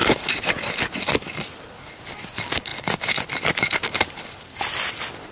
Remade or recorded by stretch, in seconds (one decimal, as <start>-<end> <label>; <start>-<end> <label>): 0.0-5.3 recorded